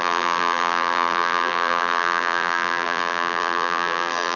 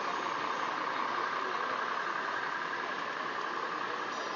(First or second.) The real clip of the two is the second